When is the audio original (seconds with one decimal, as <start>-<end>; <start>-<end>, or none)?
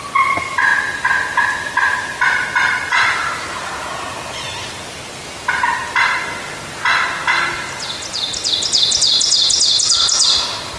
0.0-2.9; 3.7-7.2; 8.5-10.8